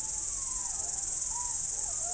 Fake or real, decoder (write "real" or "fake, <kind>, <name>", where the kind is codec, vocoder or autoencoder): real